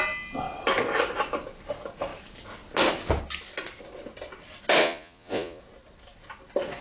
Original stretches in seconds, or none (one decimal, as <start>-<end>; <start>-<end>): 0.0-4.8; 5.6-6.8